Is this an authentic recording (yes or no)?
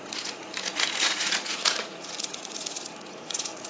no